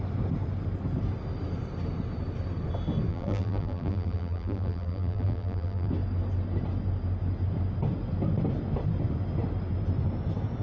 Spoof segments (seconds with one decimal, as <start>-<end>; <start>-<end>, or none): 3.1-5.9